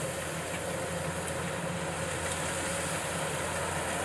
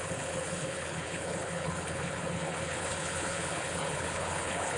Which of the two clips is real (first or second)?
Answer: first